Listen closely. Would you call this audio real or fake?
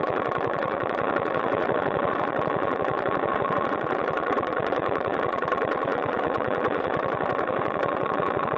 fake